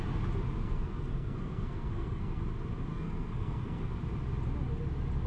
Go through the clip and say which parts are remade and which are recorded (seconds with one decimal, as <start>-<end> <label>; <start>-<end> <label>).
0.0-0.6 recorded; 0.6-2.4 remade; 2.4-2.9 recorded; 2.9-3.9 remade; 3.9-5.3 recorded